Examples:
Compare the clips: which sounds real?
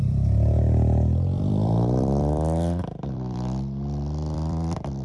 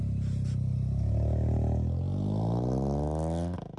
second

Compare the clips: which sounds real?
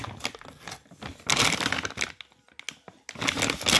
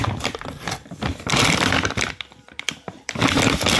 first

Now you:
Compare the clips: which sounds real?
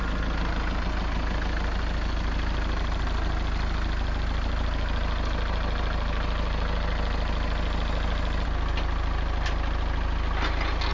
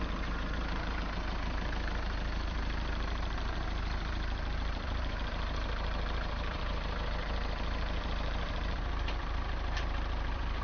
first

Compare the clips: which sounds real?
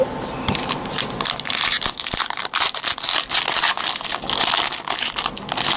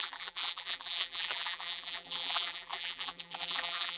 first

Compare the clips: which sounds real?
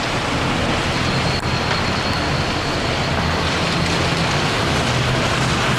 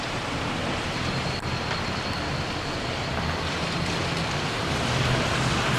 first